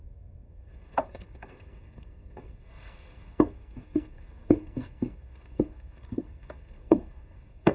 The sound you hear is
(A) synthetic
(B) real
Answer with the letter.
A